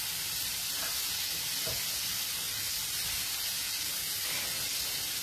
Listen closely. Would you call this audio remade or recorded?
recorded